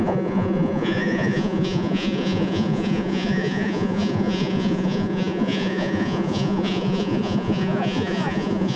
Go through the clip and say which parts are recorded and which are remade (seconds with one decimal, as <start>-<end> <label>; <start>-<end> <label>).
0.0-8.8 remade